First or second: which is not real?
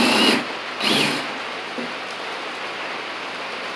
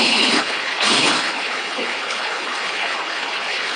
second